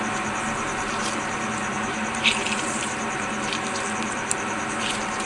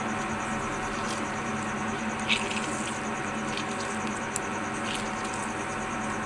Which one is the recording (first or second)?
second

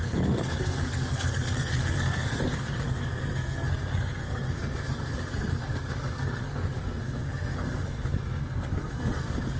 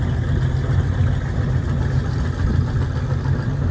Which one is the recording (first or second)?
second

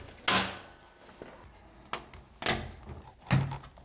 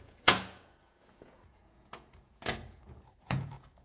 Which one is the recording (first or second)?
first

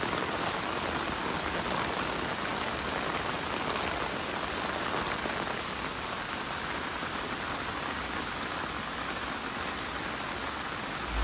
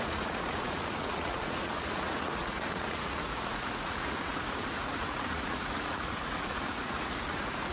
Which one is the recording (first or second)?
first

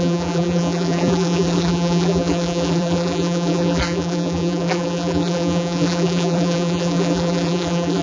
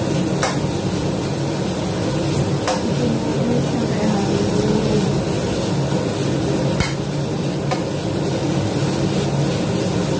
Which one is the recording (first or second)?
second